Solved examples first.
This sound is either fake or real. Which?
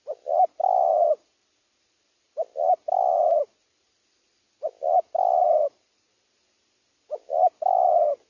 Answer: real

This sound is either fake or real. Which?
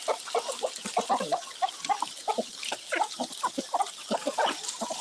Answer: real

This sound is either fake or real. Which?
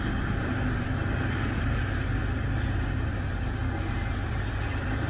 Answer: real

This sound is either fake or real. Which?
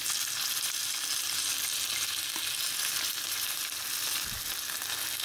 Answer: real